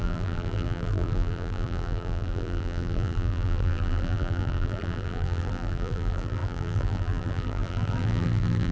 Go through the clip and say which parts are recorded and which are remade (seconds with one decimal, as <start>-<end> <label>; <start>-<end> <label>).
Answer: 0.0-8.7 remade